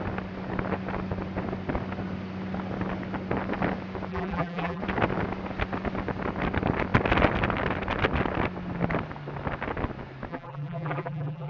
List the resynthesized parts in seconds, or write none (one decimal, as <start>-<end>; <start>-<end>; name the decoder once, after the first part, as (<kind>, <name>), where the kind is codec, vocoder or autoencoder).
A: 4.1-4.8 (vocoder, BigVGAN v2); 10.3-11.5